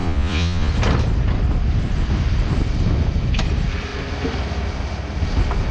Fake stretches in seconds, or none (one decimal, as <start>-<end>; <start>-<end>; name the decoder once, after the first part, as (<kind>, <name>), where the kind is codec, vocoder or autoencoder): 0.0-0.7 (vocoder, Vocos)

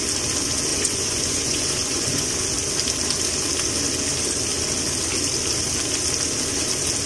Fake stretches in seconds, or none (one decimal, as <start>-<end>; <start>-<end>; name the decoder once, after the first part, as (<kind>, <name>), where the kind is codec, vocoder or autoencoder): 0.7-2.3 (vocoder, Vocos)

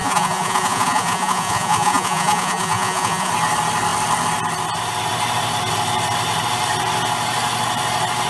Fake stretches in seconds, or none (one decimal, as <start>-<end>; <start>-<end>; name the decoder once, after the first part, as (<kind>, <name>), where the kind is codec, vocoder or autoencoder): 0.0-3.3 (vocoder, Vocos)

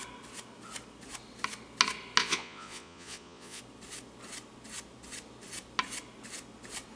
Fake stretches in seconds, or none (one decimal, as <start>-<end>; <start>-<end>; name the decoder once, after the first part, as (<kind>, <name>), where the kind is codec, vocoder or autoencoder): 2.2-3.6 (vocoder, Vocos)